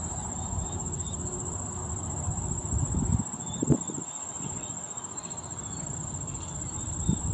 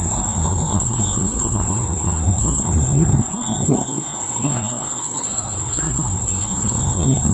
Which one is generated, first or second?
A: second